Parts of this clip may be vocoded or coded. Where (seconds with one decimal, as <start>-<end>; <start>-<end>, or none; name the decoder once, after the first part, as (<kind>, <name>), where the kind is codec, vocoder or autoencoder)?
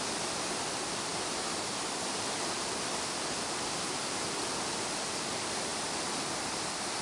0.0-7.0 (vocoder, BigVGAN v2)